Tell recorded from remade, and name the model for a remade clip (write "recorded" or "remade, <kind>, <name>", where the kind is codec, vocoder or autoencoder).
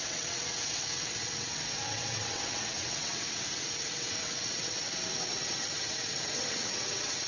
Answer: remade, vocoder, WaveNeXt